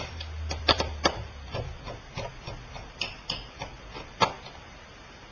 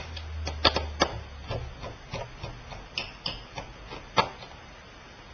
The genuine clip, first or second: second